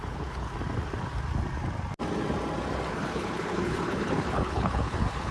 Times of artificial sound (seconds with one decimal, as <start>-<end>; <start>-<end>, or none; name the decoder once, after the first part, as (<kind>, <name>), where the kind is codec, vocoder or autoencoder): 0.0-0.5 (codec, HILCodec); 2.9-5.3